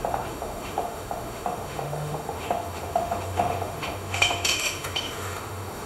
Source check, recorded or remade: remade